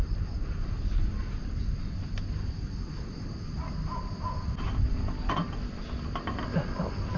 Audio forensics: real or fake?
real